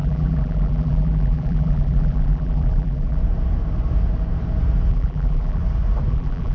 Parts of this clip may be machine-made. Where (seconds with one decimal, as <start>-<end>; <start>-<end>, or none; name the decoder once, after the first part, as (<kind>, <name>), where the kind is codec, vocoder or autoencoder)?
0.0-3.2 (vocoder, BigVGAN v2); 4.9-5.6; 6.1-6.5